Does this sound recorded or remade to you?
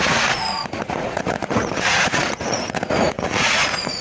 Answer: remade